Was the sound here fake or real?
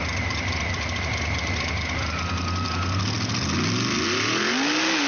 real